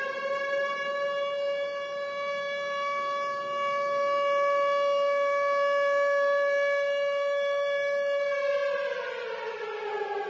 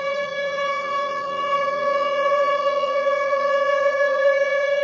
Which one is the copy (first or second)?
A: second